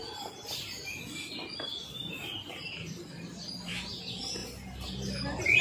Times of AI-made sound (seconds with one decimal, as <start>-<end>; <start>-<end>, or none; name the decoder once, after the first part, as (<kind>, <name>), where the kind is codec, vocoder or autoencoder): 2.0-3.0 (vocoder, BigVGAN v2)